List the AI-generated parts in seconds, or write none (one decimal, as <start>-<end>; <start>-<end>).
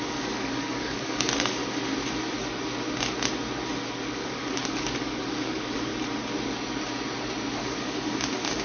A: 0.0-1.6; 4.1-5.9; 7.6-8.6